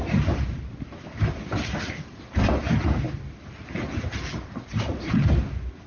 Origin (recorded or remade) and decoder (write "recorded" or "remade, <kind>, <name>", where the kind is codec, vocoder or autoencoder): remade, vocoder, BigVGAN v2